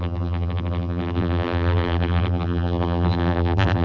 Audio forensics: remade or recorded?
remade